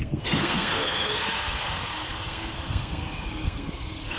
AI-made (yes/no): yes